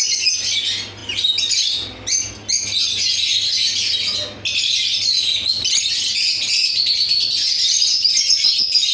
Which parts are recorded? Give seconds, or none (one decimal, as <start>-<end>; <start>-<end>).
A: 0.0-8.9